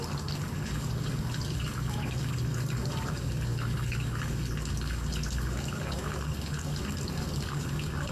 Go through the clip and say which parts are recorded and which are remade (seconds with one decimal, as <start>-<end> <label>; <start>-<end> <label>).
0.0-8.1 remade